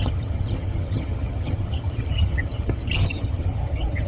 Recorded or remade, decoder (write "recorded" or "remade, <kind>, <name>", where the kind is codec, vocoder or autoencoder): remade, vocoder, HiFi-GAN